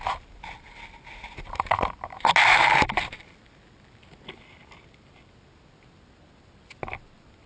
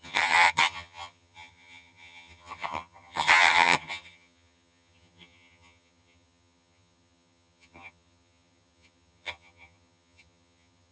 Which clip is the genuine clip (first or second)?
first